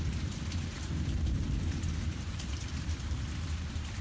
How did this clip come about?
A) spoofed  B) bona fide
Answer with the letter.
A